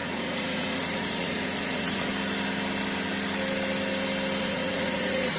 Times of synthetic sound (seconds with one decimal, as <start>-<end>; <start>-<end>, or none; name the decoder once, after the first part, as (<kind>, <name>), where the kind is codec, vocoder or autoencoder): 0.0-2.1 (vocoder, Vocos); 4.4-5.4